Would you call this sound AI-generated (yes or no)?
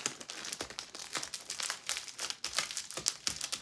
no